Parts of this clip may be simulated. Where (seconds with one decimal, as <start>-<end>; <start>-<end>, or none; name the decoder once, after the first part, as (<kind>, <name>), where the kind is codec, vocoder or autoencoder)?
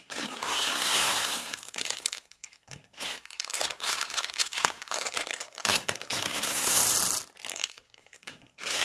0.0-6.8 (codec, SNAC); 7.5-8.8